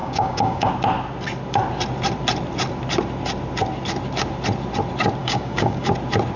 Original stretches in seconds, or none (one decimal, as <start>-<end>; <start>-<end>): 0.7-5.2; 5.9-6.4